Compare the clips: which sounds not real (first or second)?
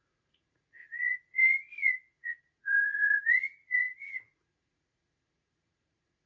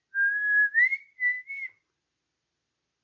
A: first